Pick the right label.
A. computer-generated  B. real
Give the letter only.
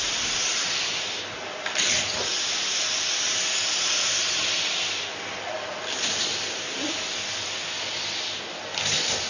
B